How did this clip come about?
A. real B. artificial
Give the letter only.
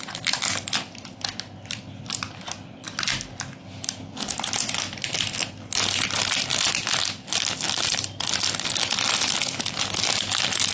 A